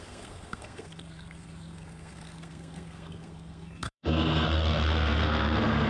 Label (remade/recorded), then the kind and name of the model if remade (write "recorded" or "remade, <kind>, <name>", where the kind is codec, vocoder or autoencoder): remade, codec, SNAC